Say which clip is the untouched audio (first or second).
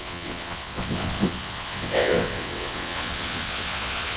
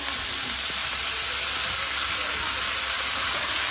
second